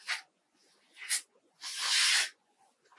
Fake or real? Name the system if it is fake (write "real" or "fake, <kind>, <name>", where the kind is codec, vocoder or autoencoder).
fake, vocoder, Vocos